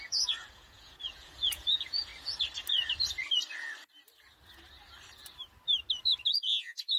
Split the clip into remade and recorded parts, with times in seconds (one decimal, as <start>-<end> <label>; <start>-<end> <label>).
0.0-2.1 remade; 2.1-6.3 recorded; 6.3-7.0 remade